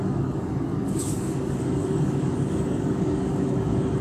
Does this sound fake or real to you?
fake